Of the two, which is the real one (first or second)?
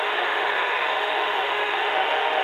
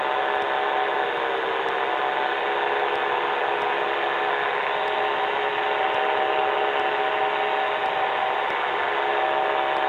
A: second